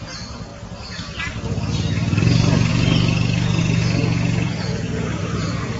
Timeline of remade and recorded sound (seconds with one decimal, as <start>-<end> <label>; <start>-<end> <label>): 0.0-0.5 remade; 0.5-1.9 recorded; 1.9-5.8 remade